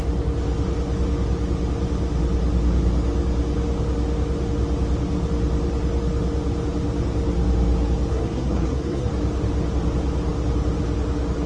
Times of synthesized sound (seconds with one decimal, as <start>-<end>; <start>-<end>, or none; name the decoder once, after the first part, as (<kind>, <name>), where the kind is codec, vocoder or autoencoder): 8.1-9.1 (codec, SNAC)